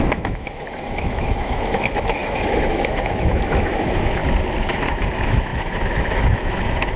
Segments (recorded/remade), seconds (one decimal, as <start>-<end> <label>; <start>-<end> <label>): 0.0-4.2 remade; 4.2-4.7 recorded; 4.7-7.0 remade